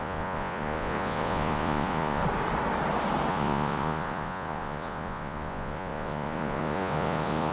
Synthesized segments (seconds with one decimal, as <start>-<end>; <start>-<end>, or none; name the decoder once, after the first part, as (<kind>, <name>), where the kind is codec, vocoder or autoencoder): 0.0-2.2 (vocoder, Vocos); 3.3-7.5